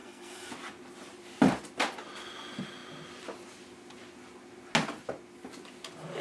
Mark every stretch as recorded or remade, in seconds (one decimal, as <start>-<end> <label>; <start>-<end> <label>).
0.0-0.5 remade; 0.5-6.2 recorded